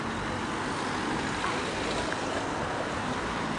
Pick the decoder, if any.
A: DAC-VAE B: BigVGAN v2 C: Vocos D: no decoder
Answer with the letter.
D